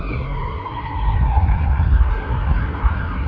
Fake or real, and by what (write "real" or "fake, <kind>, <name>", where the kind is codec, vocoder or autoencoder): fake, codec, SNAC